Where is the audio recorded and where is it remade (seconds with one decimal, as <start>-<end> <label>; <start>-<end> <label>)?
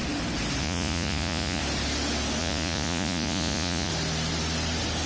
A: 0.0-0.6 recorded; 0.6-1.6 remade; 1.6-2.4 recorded; 2.4-3.9 remade; 3.9-5.1 recorded